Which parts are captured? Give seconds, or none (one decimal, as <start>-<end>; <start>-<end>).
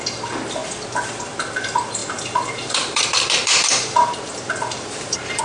0.0-2.0